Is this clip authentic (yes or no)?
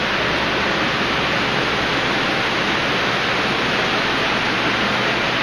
yes